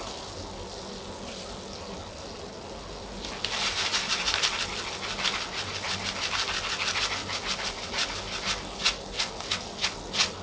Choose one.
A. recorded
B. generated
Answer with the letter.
A